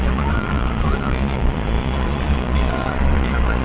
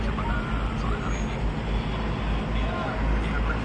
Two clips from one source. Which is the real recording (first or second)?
second